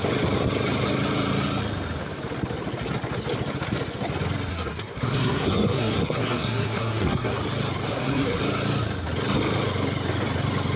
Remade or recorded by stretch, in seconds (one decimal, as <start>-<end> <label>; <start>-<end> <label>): 0.0-4.5 recorded; 4.5-7.4 remade; 7.4-7.9 recorded; 7.9-8.4 remade; 8.4-10.8 recorded

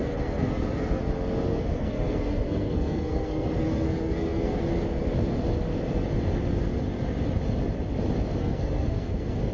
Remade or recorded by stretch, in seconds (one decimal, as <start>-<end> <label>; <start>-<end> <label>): 0.0-1.0 remade; 1.0-1.5 recorded; 1.5-4.6 remade; 4.6-8.4 recorded; 8.4-9.5 remade